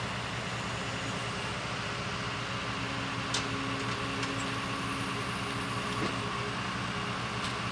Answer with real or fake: real